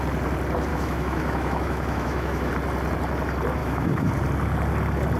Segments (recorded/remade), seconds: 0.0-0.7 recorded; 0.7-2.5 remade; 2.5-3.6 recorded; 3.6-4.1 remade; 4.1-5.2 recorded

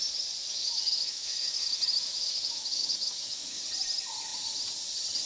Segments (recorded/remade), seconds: 0.0-0.4 recorded; 0.4-3.6 remade; 3.6-5.3 recorded

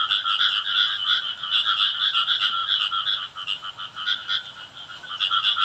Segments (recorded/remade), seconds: 0.0-5.6 recorded

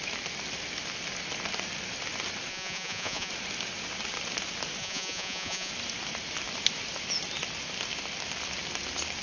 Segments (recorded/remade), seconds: 0.0-2.5 recorded; 2.5-3.3 remade; 3.3-4.8 recorded; 4.8-5.7 remade; 5.7-9.2 recorded

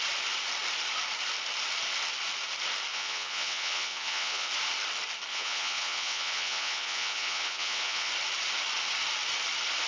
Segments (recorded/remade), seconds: 0.0-2.9 recorded; 2.9-4.5 remade; 4.5-5.3 recorded; 5.3-8.1 remade; 8.1-9.9 recorded

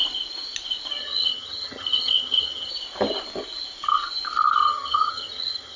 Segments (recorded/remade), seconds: 0.0-1.0 recorded; 1.0-2.7 remade; 2.7-4.6 recorded; 4.6-5.8 remade

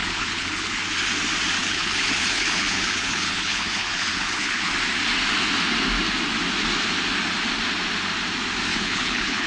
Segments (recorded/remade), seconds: 0.0-0.8 remade; 0.8-1.6 recorded; 1.6-4.7 remade; 4.7-8.7 recorded; 8.7-9.5 remade

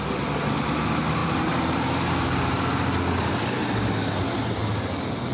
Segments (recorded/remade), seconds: 0.0-5.3 recorded